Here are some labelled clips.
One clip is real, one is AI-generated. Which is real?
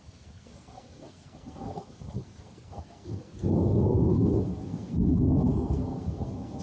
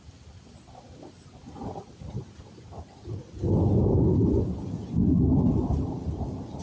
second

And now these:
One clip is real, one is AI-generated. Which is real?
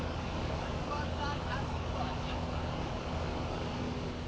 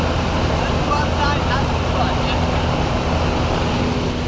second